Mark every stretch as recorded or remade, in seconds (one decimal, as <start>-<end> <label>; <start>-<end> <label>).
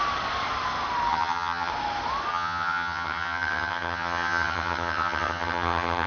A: 0.0-1.1 recorded; 1.1-1.7 remade; 1.7-2.3 recorded; 2.3-6.1 remade